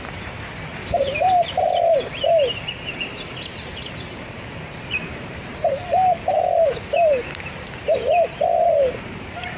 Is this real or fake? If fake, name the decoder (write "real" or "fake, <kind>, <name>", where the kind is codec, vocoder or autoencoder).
fake, vocoder, BigVGAN v2